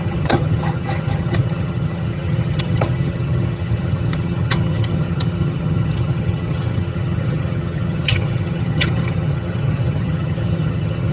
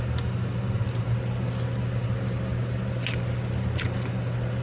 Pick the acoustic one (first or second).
second